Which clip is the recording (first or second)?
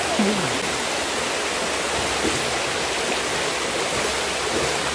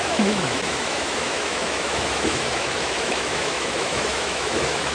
first